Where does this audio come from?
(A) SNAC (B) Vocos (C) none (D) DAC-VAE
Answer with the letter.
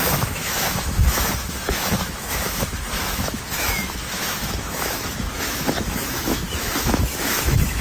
D